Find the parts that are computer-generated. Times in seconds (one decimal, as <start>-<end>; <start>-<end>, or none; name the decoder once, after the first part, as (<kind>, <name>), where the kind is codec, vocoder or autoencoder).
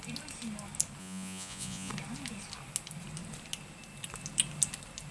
1.0-1.9 (vocoder, Vocos)